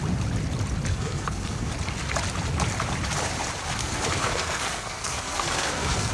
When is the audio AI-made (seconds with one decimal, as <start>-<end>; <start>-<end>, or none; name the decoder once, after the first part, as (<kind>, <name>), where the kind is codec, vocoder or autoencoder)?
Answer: 0.9-1.7 (codec, SNAC); 3.8-6.1